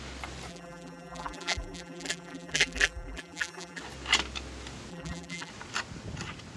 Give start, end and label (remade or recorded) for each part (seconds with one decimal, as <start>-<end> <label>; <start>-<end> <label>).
0.0-0.5 recorded; 0.5-3.8 remade; 3.8-4.9 recorded; 4.9-5.5 remade; 5.5-6.6 recorded